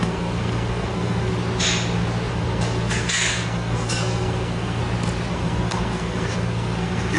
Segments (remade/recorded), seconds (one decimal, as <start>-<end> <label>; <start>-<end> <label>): 0.0-1.3 remade; 1.3-2.3 recorded; 2.3-4.8 remade; 4.8-5.3 recorded; 5.3-7.2 remade